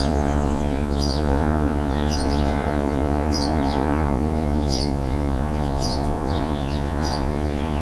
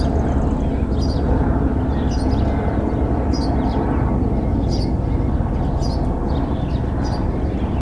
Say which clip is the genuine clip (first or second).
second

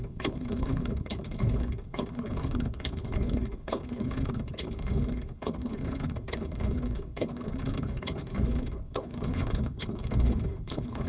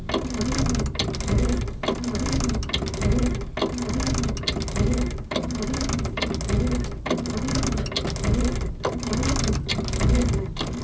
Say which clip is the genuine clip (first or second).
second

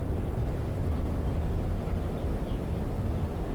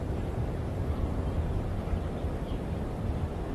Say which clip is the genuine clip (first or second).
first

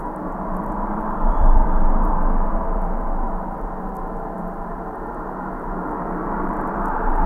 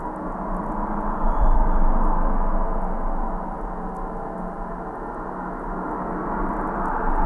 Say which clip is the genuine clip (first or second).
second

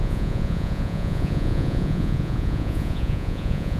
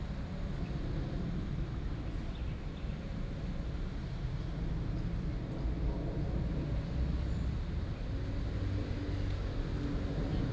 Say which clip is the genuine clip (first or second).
second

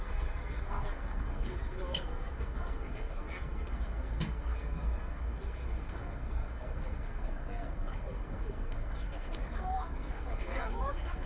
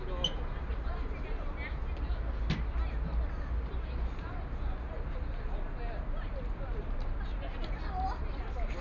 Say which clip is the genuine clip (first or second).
second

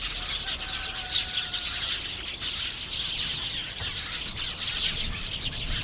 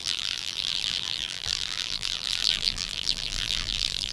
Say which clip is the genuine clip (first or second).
first